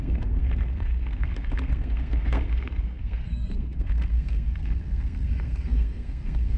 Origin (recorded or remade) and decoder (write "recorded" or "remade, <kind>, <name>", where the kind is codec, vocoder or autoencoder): remade, codec, SNAC